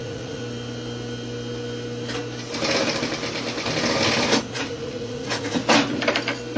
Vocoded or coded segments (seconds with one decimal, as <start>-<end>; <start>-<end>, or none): 0.0-0.4; 4.4-5.6